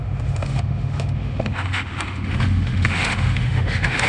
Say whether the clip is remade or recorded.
remade